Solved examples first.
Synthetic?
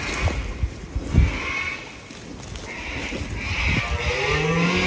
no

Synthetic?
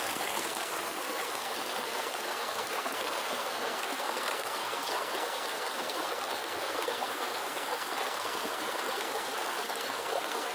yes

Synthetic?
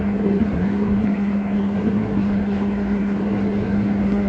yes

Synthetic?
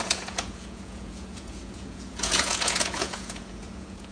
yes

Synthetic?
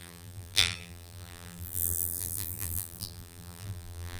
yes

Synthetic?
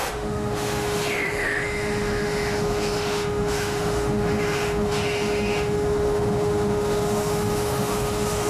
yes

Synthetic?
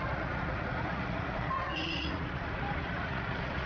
yes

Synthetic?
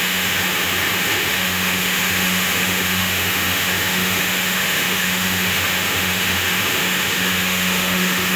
yes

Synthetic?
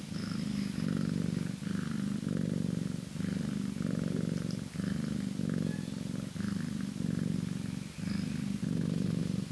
no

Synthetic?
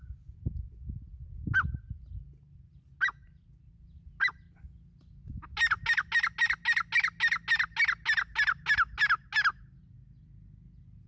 no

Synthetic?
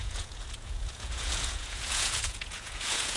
yes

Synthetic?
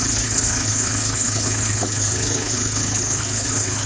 yes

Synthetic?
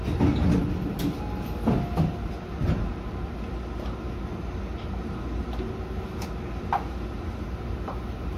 no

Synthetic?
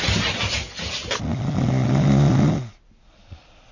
no